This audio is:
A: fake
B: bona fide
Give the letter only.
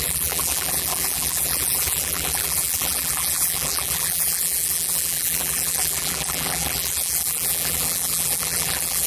A